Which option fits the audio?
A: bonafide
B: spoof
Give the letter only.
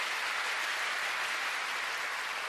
A